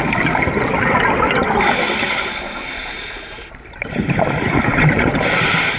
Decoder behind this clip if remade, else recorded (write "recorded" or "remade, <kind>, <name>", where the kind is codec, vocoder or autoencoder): remade, vocoder, BigVGAN v2